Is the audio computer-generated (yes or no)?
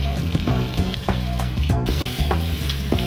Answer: yes